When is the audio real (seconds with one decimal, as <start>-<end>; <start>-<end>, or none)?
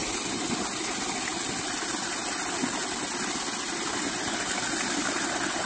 0.0-5.7